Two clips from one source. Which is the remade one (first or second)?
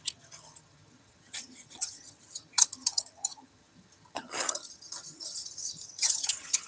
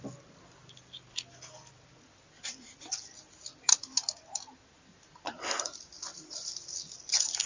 first